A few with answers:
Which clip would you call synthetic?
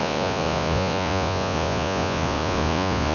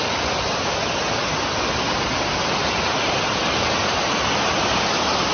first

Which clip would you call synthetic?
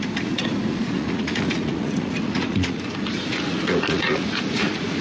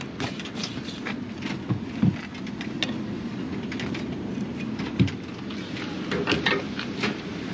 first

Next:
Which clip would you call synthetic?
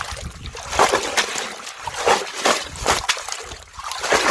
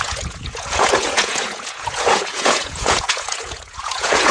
second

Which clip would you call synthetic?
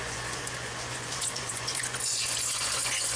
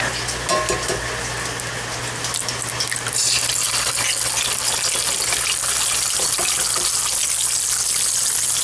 first